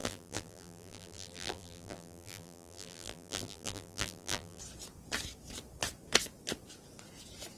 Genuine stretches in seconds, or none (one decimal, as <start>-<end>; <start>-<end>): 4.6-7.6